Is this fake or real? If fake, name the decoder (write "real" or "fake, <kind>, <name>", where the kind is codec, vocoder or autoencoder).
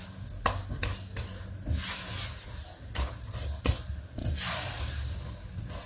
real